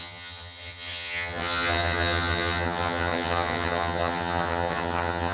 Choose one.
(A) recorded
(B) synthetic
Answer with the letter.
B